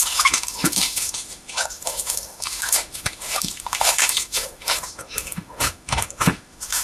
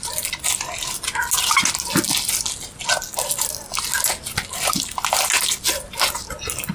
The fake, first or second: first